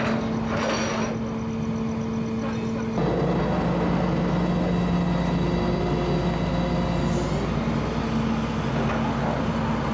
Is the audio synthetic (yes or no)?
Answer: no